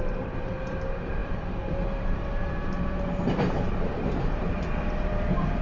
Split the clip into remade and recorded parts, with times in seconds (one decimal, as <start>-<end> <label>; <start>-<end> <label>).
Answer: 0.0-5.6 remade